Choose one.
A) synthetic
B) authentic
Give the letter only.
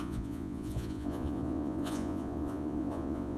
A